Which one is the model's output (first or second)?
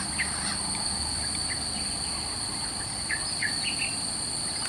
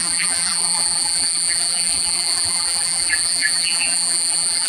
second